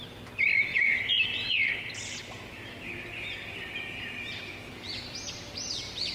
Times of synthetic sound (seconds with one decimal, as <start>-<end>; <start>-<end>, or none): 0.7-1.7; 2.1-5.0